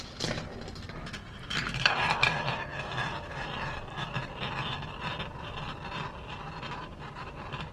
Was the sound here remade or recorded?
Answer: recorded